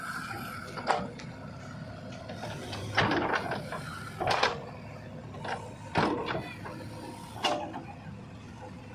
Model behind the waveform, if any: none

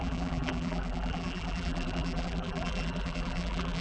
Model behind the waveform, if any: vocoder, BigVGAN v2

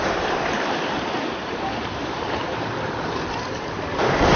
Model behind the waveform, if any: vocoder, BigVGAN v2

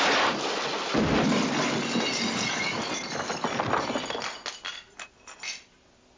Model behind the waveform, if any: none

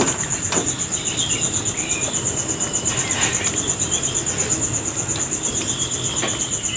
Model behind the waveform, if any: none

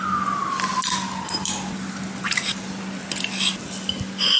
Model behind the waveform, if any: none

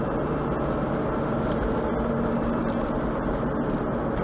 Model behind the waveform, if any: none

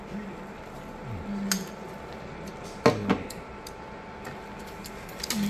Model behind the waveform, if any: none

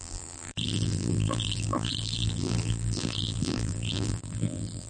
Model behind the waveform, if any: vocoder, BigVGAN v2